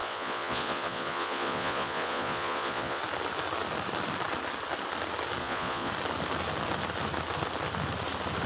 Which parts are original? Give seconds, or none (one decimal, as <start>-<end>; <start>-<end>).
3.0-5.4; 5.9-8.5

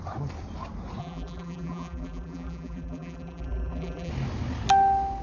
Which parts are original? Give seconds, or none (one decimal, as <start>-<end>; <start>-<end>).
0.0-1.0; 4.1-5.2

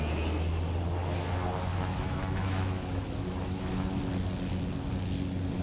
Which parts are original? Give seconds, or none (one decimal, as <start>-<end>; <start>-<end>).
0.0-1.7; 4.0-5.6

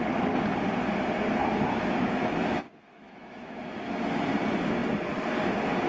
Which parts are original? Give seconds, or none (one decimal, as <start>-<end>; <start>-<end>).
0.0-1.4; 3.6-5.9

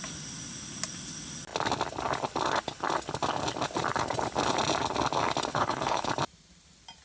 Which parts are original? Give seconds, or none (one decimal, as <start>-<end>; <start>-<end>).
0.0-5.5; 6.1-7.0

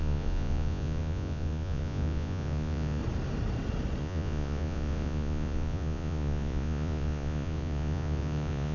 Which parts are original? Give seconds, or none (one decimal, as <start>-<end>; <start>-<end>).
3.0-4.0